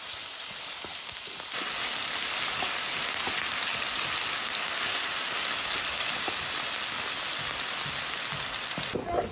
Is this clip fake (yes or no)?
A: no